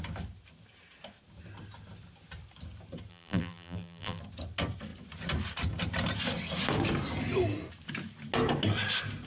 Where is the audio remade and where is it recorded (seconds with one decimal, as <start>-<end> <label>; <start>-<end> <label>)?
0.0-3.1 recorded; 3.1-4.2 remade; 4.2-9.3 recorded